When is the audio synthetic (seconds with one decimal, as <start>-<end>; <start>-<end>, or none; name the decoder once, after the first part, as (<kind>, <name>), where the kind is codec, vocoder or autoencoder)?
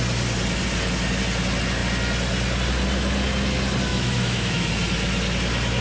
3.9-4.7 (autoencoder, DAC-VAE)